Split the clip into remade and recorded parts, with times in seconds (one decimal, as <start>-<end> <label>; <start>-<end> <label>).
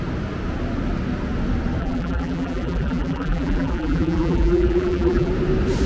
0.0-1.8 recorded; 1.8-5.3 remade; 5.3-5.9 recorded